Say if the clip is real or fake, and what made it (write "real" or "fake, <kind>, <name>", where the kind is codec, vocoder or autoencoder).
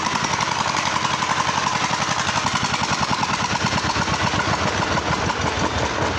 fake, vocoder, BigVGAN v2